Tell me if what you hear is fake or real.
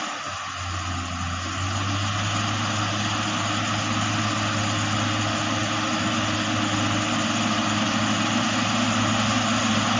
real